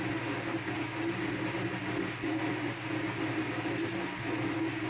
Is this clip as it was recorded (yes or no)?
yes